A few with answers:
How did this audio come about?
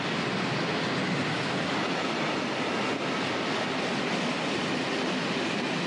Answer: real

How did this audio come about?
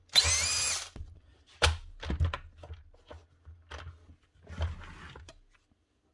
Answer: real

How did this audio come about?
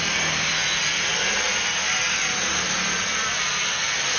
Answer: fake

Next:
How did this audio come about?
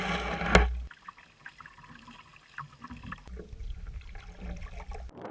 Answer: real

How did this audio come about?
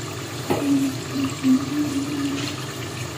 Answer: fake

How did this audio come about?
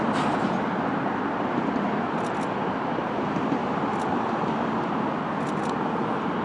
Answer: real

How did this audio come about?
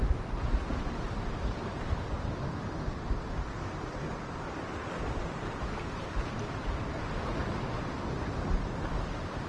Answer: real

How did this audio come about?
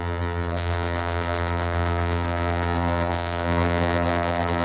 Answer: fake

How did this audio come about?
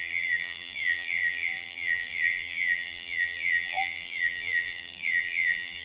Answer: fake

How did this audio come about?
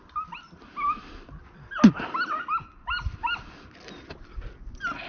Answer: real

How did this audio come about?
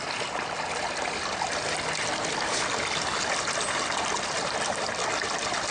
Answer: real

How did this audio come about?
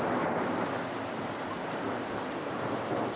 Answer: real